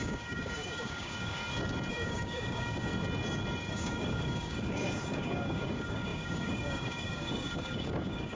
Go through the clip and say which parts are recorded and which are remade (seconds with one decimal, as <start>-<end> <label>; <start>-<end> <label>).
0.0-1.4 remade; 1.4-1.9 recorded; 1.9-2.9 remade; 2.9-3.7 recorded; 3.7-8.3 remade